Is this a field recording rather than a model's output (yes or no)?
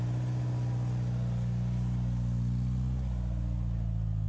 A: yes